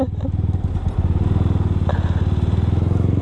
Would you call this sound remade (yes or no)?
no